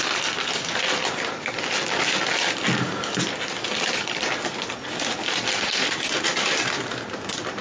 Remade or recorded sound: recorded